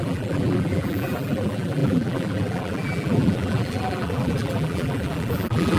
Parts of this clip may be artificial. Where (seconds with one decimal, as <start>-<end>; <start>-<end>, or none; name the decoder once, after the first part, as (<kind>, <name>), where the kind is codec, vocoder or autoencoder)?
0.0-5.8 (vocoder, BigVGAN v2)